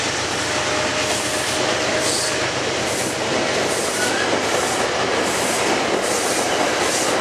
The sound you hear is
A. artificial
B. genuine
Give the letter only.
B